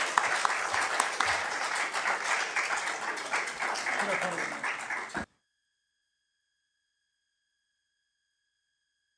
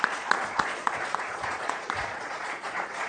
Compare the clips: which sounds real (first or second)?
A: first